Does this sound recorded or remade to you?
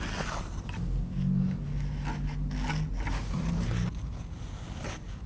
recorded